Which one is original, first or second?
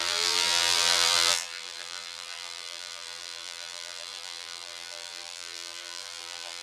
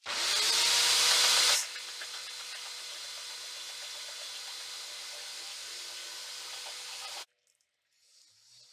second